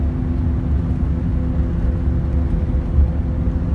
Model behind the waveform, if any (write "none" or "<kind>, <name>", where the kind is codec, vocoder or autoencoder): none